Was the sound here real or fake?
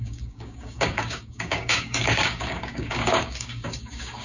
fake